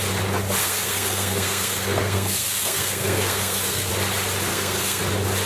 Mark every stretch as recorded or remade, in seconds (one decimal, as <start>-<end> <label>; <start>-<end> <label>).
0.0-0.6 recorded; 0.6-3.9 remade; 3.9-4.5 recorded; 4.5-5.0 remade; 5.0-5.5 recorded